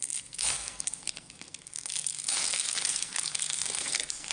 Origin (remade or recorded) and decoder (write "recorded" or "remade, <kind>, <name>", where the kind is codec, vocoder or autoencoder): remade, codec, SNAC